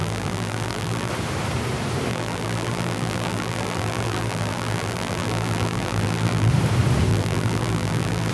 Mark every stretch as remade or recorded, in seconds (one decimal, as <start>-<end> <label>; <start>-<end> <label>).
0.0-1.1 remade; 1.1-2.1 recorded; 2.1-6.5 remade; 6.5-7.1 recorded; 7.1-8.3 remade